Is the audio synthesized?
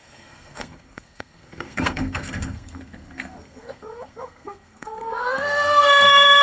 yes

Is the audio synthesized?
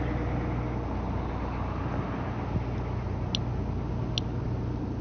no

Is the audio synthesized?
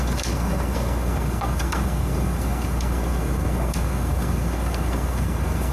yes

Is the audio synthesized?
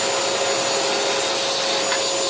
no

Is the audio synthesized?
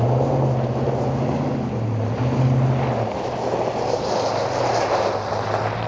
no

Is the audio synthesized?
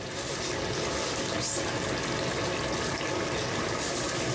no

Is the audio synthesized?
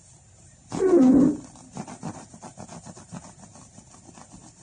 no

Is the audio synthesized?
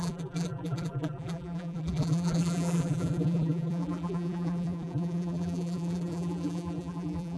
yes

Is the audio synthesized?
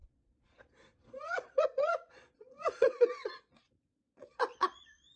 yes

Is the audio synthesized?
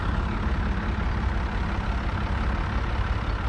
no